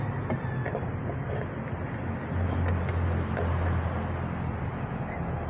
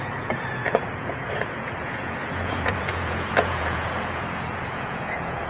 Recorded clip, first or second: first